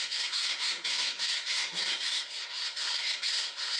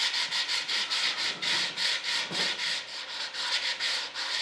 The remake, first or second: first